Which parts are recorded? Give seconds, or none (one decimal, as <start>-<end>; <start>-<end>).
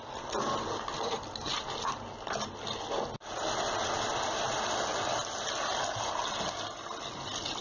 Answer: 0.0-7.6